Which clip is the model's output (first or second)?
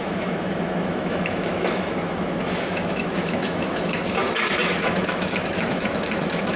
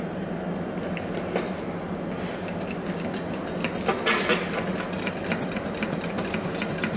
first